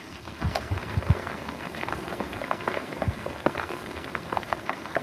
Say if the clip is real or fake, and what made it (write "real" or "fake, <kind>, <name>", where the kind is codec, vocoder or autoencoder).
fake, codec, SNAC